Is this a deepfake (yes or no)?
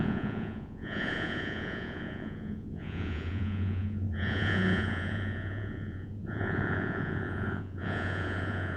yes